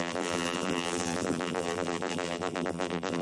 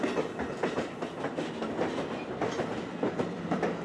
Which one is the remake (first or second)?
first